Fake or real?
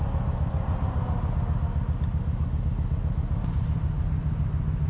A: real